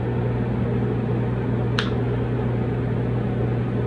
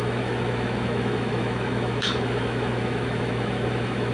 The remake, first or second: second